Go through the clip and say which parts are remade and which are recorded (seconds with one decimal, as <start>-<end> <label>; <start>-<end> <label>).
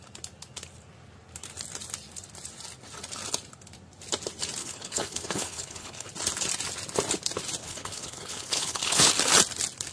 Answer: 0.0-4.6 recorded; 4.6-6.1 remade; 6.1-7.6 recorded; 7.6-9.1 remade; 9.1-9.9 recorded